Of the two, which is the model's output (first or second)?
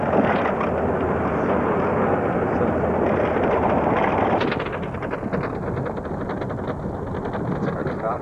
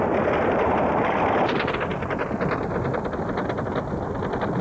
second